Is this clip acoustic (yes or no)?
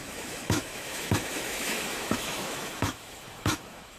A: no